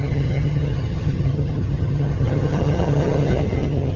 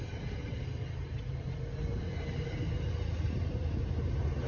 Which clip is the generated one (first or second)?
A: first